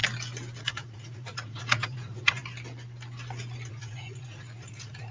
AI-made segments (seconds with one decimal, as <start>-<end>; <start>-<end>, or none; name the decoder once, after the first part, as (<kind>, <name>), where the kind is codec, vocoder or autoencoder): 0.6-2.4 (vocoder, Vocos); 3.7-5.1